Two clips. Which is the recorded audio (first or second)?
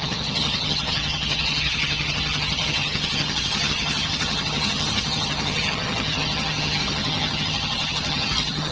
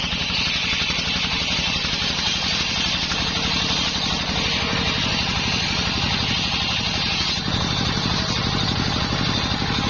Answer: second